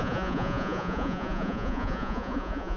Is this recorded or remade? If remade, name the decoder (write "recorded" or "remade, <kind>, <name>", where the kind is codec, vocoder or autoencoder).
remade, vocoder, Vocos